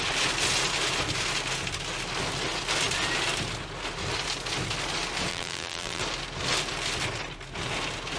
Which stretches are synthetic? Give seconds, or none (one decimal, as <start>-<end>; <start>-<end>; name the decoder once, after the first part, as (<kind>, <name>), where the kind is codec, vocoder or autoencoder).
5.3-6.0 (vocoder, BigVGAN v2)